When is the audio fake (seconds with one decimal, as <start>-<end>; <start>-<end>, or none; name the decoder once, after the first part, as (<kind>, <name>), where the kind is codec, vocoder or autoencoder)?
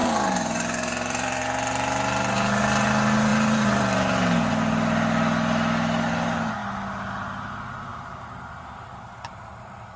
0.0-1.4 (vocoder, BigVGAN v2); 3.3-4.5; 7.9-10.0